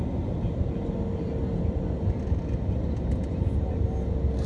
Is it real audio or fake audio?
real